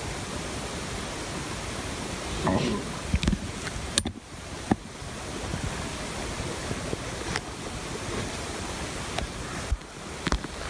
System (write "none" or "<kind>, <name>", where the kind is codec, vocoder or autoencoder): none